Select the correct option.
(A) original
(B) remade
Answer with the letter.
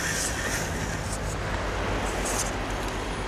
A